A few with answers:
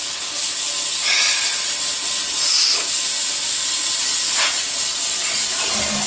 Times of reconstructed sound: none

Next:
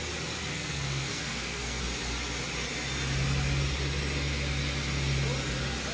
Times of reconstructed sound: 0.5-1.8 (codec, SNAC)

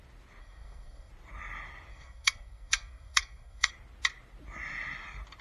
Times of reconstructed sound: 0.4-1.1 (codec, SNAC); 1.9-3.7